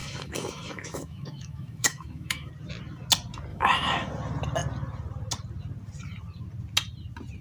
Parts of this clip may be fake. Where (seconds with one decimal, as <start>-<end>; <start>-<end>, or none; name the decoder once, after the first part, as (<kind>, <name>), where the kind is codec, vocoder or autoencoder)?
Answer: 0.0-2.5 (autoencoder, DAC-VAE); 3.5-4.1